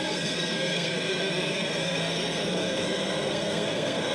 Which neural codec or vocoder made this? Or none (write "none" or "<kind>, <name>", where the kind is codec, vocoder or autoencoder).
codec, SNAC